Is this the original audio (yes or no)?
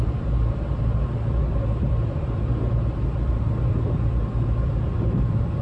no